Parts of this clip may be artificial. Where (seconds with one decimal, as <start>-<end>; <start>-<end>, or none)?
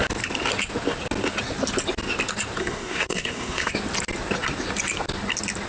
2.6-3.7